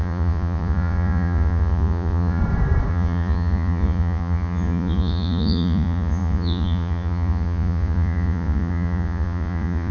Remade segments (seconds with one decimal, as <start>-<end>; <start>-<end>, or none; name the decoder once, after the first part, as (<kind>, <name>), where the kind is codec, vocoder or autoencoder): 0.0-2.4 (vocoder, Vocos); 2.9-9.9